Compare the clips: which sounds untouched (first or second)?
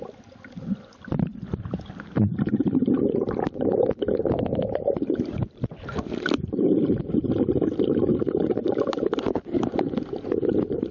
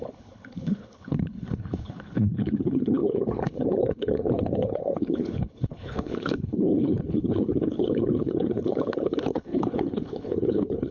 first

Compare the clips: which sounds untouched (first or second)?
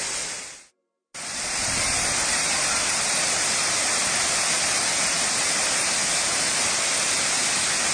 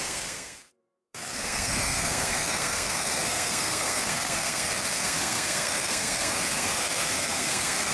first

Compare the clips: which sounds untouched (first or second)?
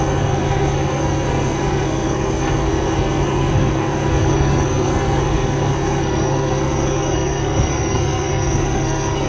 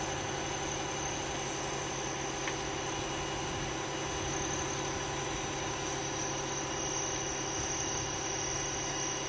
second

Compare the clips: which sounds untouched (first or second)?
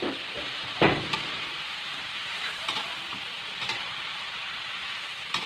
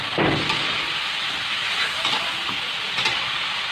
second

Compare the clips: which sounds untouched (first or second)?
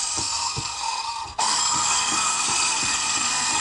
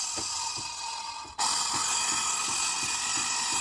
second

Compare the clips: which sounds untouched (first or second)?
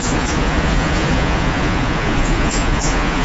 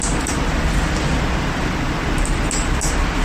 second